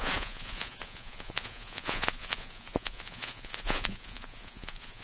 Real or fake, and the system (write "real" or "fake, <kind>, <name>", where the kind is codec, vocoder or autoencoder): fake, vocoder, Vocos